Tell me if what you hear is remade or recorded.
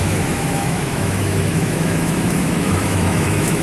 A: remade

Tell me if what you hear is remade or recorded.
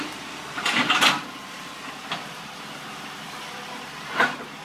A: recorded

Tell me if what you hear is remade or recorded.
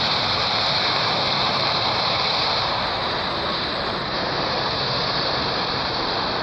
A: remade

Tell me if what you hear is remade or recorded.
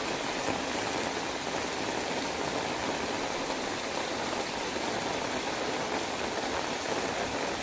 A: recorded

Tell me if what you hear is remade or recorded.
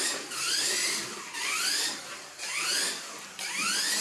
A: recorded